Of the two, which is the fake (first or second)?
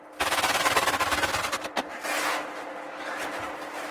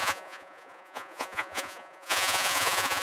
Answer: second